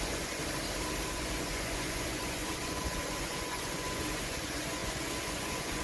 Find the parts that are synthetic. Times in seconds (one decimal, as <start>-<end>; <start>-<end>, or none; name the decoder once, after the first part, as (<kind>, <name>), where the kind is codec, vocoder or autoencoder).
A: 0.0-0.4 (vocoder, Vocos); 1.1-5.8